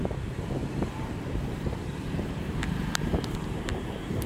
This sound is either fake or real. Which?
fake